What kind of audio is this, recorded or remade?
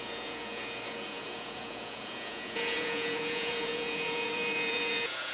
remade